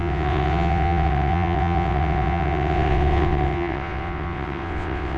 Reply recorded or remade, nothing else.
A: remade